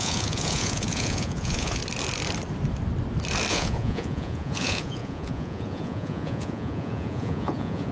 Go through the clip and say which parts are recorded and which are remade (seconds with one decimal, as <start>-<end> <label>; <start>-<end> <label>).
0.0-1.8 remade; 1.8-3.5 recorded; 3.5-7.9 remade